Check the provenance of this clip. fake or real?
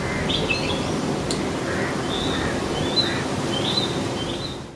real